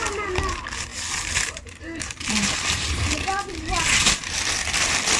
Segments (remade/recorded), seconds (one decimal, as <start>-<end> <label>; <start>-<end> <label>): 0.0-0.9 recorded; 0.9-3.0 remade; 3.0-5.2 recorded